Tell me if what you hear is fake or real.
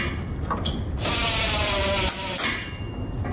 real